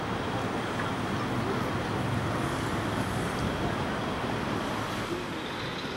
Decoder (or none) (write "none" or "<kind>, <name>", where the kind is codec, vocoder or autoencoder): none